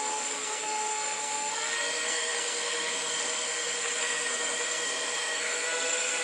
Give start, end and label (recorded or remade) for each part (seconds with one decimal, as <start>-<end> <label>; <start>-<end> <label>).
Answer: 0.0-6.2 remade

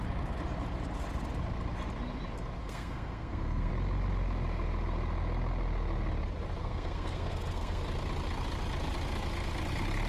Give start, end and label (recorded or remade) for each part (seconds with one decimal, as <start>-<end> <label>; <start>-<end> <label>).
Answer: 0.0-2.6 recorded; 2.6-3.7 remade; 3.7-6.6 recorded; 6.6-7.8 remade; 7.8-10.1 recorded

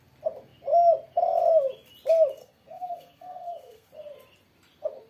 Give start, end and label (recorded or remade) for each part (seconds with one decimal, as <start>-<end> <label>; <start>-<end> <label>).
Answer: 0.0-2.4 recorded; 2.4-3.9 remade; 3.9-5.1 recorded

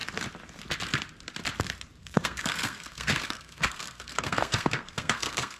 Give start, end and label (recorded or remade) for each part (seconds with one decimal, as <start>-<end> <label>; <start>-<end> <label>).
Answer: 0.0-2.0 recorded; 2.0-5.6 remade

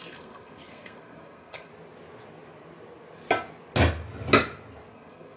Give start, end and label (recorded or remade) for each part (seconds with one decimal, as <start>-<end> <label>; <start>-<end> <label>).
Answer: 0.0-1.7 remade; 1.7-4.9 recorded; 4.9-5.4 remade

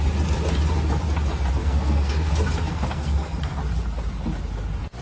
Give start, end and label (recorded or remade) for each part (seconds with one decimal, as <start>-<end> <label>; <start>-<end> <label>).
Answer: 0.0-1.6 recorded; 1.6-2.3 remade; 2.3-2.7 recorded; 2.7-3.6 remade; 3.6-5.0 recorded

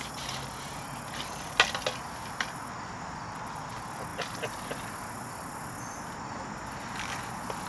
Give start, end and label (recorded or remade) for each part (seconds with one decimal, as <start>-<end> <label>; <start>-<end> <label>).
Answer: 0.0-7.7 recorded